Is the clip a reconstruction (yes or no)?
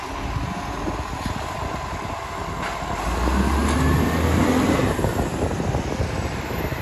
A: no